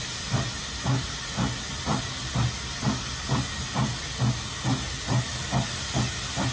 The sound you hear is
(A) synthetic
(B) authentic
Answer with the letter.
B